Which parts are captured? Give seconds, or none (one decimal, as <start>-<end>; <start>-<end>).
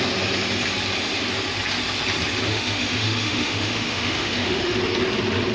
0.0-2.5; 4.8-5.5